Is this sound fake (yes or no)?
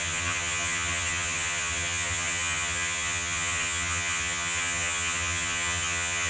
yes